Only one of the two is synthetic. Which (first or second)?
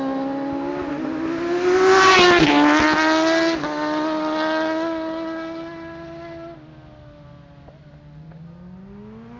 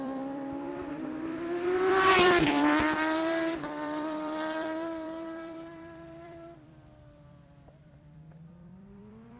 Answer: second